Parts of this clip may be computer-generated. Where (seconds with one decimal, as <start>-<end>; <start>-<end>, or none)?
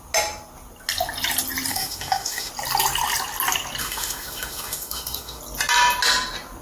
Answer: 1.7-2.5; 3.8-5.4